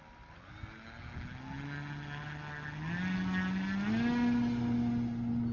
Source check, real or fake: real